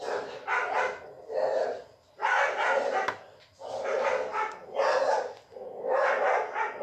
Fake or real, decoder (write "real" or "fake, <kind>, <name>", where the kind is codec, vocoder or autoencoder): real